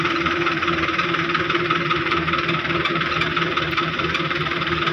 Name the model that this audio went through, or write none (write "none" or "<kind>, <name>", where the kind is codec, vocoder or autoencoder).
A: vocoder, BigVGAN v2